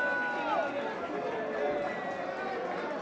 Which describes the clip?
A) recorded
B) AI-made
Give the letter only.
A